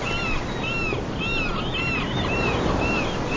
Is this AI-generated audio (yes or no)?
no